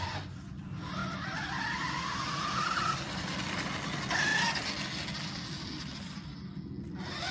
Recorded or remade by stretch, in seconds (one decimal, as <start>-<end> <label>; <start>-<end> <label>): 0.0-7.3 recorded